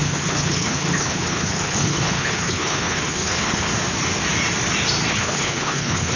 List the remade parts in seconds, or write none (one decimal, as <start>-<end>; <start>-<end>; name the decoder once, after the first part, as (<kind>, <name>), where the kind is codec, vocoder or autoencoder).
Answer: 0.0-3.7 (codec, HILCodec); 5.1-6.2